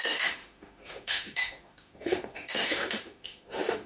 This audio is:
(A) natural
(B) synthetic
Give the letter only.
B